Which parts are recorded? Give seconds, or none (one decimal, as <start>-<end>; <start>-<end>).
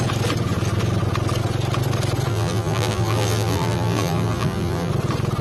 0.0-2.3; 4.9-5.4